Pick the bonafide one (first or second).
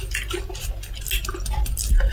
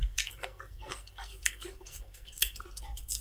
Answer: first